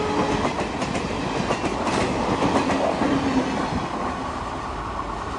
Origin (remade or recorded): recorded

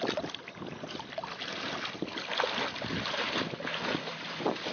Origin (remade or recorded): recorded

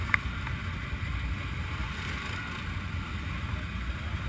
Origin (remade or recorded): recorded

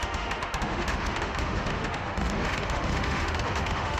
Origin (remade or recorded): remade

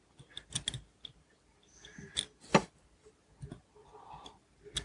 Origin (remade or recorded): recorded